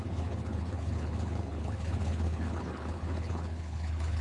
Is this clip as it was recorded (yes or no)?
no